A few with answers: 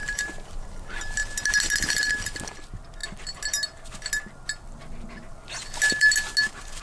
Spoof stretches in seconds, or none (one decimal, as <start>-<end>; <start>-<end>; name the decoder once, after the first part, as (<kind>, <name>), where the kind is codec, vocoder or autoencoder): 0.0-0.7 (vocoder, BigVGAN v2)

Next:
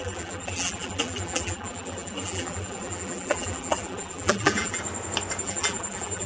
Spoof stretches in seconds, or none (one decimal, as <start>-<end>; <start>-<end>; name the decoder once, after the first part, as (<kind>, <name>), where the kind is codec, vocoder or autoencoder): 0.0-4.8 (vocoder, BigVGAN v2); 5.4-6.3

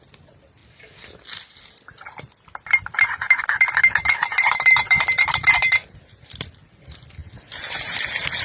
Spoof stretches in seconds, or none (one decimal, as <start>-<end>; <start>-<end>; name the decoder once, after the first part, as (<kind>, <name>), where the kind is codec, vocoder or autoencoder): 4.3-5.9 (vocoder, BigVGAN v2)

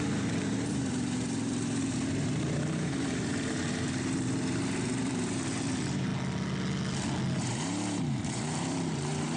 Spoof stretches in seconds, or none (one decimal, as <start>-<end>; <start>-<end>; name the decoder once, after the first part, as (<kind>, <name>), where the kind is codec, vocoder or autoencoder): 0.0-6.1 (vocoder, BigVGAN v2); 7.3-9.4